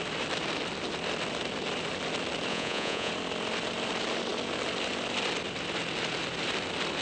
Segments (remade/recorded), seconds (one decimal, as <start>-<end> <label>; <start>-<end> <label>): 0.0-2.5 recorded; 2.5-3.1 remade; 3.1-7.0 recorded